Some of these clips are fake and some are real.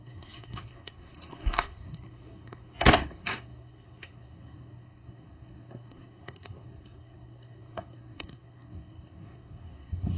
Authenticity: fake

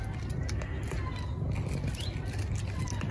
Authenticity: real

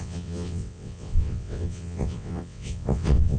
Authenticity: fake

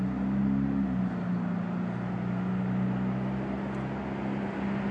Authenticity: real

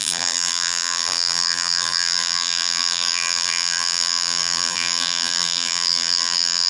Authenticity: fake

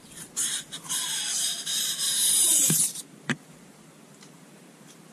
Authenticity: fake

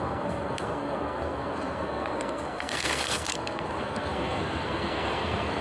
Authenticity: fake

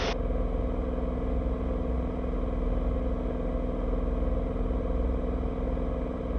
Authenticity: real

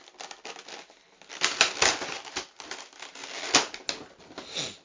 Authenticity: real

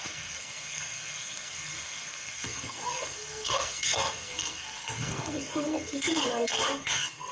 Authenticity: fake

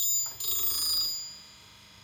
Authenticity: real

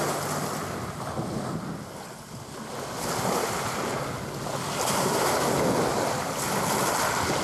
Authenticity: real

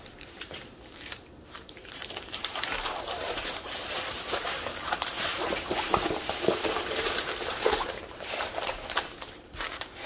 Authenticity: fake